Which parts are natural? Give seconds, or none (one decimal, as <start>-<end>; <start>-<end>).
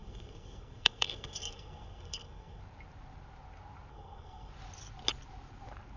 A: 2.6-3.9; 4.5-6.0